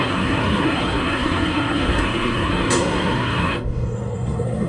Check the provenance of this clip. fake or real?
fake